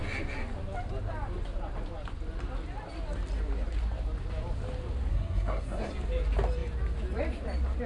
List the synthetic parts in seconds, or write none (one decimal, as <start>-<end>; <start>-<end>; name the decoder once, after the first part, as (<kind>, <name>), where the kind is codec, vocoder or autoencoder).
5.1-5.9 (codec, SNAC)